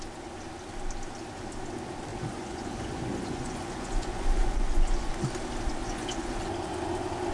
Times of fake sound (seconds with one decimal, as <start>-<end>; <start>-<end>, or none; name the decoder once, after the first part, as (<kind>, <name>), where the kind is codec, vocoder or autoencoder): 2.1-5.1 (vocoder, Vocos); 5.8-6.5